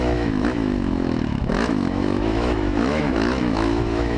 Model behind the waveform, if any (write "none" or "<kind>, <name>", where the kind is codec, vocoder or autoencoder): autoencoder, DAC-VAE